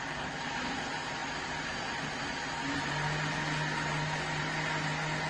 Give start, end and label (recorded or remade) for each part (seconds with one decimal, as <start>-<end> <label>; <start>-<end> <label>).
0.0-5.3 recorded